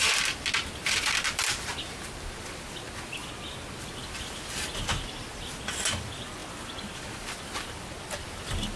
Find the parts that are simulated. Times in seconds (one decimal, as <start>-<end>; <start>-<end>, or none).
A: none